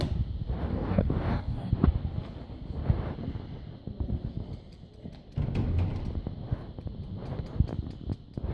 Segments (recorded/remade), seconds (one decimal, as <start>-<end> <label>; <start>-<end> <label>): 0.0-0.7 recorded; 0.7-1.7 remade; 1.7-8.5 recorded